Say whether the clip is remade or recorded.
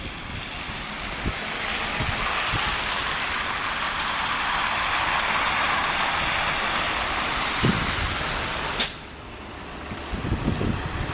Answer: recorded